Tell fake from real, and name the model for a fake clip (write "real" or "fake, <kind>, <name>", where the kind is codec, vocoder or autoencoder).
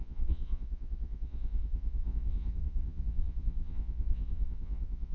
fake, vocoder, Vocos